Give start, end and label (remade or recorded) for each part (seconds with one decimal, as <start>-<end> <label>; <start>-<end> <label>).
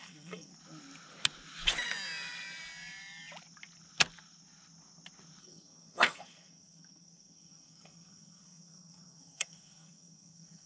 0.0-0.5 remade; 0.5-5.4 recorded; 5.4-10.7 remade